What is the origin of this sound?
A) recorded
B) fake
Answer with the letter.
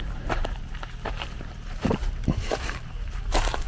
B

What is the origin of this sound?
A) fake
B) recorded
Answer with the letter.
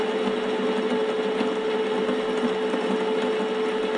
B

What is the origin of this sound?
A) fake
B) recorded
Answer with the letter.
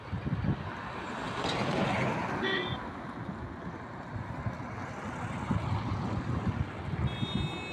B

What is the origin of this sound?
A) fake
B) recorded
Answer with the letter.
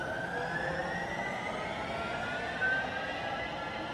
B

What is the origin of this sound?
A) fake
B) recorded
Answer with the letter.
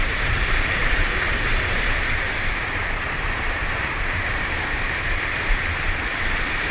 A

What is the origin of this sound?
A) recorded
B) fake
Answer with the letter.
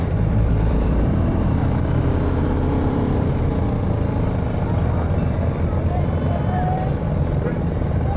B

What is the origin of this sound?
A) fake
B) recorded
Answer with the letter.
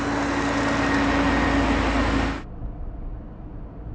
B